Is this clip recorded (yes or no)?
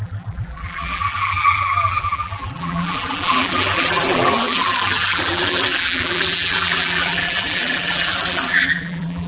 no